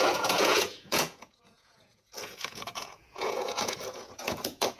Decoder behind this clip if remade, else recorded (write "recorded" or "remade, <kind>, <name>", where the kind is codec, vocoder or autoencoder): remade, vocoder, Vocos